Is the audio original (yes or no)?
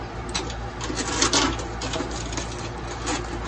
yes